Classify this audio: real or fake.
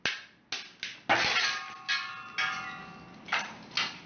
real